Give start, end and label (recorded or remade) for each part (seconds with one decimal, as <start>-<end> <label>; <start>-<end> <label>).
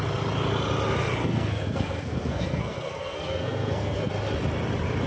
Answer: 0.0-1.2 recorded; 1.2-4.1 remade; 4.1-5.1 recorded